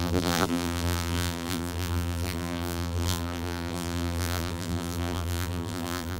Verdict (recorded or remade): remade